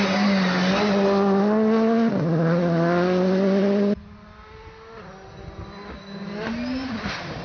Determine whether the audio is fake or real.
real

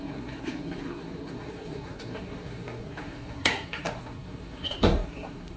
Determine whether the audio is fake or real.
fake